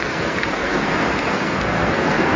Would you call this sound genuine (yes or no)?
no